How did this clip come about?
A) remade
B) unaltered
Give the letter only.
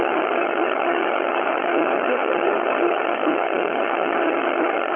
A